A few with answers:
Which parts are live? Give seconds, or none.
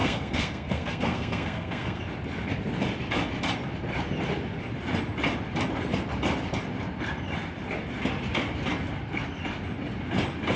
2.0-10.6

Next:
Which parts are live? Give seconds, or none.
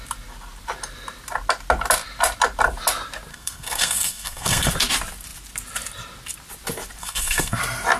0.0-3.3; 4.7-7.0; 7.6-8.0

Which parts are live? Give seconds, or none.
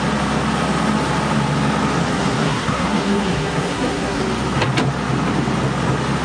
0.0-2.1; 4.2-6.2